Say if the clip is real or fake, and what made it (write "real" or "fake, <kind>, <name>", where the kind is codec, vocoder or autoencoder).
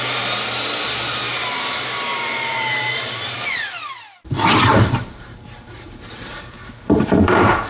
fake, vocoder, BigVGAN v2